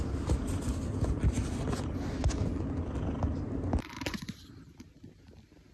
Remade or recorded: recorded